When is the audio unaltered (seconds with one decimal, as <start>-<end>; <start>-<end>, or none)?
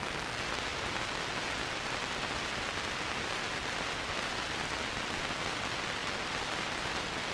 0.0-7.3